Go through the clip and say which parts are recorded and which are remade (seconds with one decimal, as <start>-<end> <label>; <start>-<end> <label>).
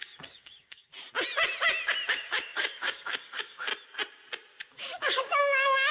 0.0-0.9 remade; 0.9-2.1 recorded; 2.1-3.7 remade; 3.7-4.7 recorded; 4.7-5.9 remade